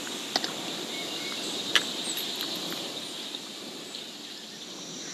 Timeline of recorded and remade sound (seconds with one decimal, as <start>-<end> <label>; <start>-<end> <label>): 0.0-2.6 recorded; 2.6-4.0 remade; 4.0-5.1 recorded